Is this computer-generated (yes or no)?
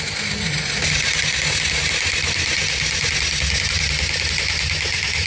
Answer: no